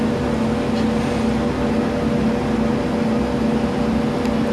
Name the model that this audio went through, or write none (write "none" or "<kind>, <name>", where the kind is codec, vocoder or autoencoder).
none